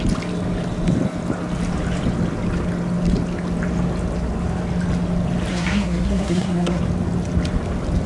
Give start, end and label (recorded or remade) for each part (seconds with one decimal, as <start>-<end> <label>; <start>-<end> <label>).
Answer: 0.0-5.5 recorded; 5.5-6.8 remade; 6.8-8.1 recorded